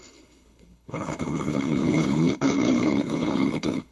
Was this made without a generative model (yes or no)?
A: no